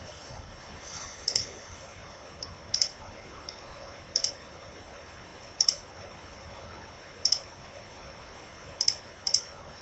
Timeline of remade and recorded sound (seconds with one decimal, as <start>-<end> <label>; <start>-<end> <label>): 0.0-9.8 remade